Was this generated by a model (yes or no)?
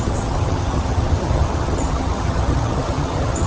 yes